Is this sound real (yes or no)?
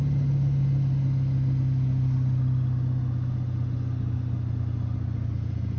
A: yes